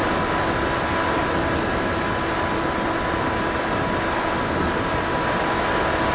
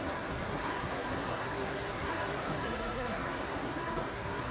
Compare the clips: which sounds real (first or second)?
first